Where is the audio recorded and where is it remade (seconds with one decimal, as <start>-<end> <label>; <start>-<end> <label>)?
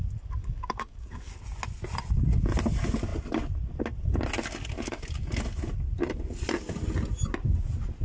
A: 0.0-0.4 recorded; 0.4-1.3 remade; 1.3-8.0 recorded